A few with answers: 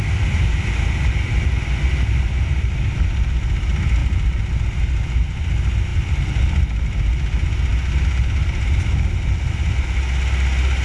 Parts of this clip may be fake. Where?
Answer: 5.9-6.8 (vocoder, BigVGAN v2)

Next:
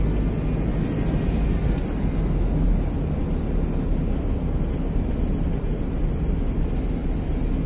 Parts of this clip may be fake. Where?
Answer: none

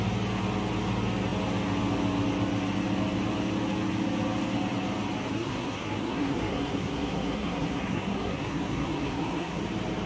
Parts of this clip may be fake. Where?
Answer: 5.3-9.6 (codec, SNAC)